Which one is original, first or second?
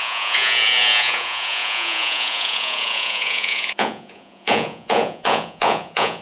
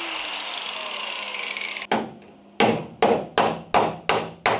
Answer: second